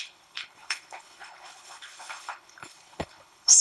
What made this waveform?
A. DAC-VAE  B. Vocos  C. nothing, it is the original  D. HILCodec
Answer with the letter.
D